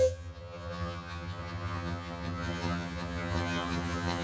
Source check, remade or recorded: remade